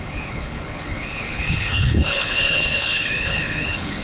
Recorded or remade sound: remade